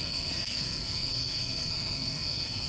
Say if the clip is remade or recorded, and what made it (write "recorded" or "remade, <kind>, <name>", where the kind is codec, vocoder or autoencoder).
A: remade, codec, SNAC